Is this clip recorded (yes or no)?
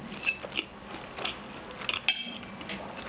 yes